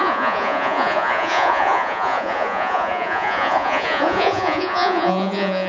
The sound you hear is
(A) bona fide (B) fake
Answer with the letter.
B